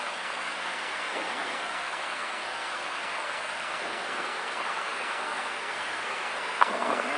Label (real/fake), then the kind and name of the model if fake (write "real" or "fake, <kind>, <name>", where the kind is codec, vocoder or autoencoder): fake, codec, SNAC